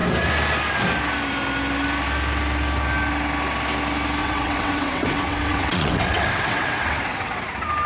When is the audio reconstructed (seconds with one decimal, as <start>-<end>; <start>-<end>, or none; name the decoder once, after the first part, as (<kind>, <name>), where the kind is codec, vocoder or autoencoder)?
4.2-7.4 (vocoder, WaveNeXt)